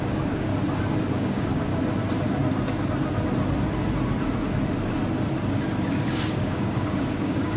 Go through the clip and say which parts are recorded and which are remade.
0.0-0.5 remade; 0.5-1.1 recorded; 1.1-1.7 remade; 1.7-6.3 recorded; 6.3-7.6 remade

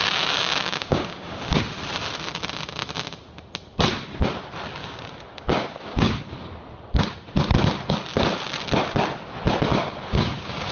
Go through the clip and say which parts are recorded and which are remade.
0.0-1.6 remade; 1.6-4.8 recorded; 4.8-6.5 remade; 6.5-9.7 recorded; 9.7-10.7 remade

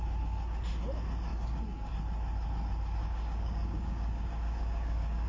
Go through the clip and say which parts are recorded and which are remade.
0.0-1.3 recorded; 1.3-1.9 remade; 1.9-3.0 recorded; 3.0-5.3 remade

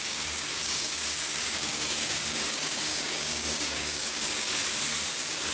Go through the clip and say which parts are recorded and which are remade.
0.0-4.6 remade; 4.6-5.1 recorded; 5.1-5.5 remade

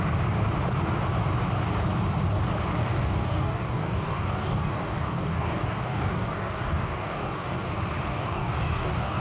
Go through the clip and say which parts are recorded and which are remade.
0.0-2.8 recorded; 2.8-7.7 remade; 7.7-8.1 recorded; 8.1-9.2 remade

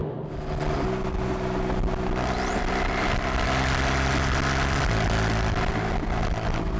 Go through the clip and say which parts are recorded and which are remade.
0.0-6.8 recorded

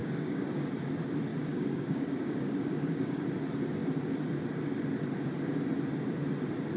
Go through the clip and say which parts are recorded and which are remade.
0.0-0.7 remade; 0.7-1.3 recorded; 1.3-3.2 remade; 3.2-6.8 recorded

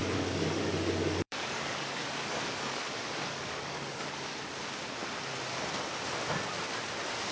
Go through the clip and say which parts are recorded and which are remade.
0.0-4.4 remade; 4.4-7.3 recorded